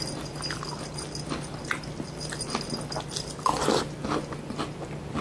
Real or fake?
real